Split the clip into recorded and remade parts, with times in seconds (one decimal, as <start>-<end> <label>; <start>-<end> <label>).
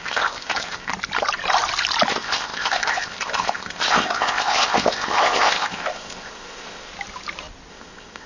0.0-0.9 remade; 0.9-2.1 recorded; 2.1-6.9 remade; 6.9-7.7 recorded; 7.7-8.3 remade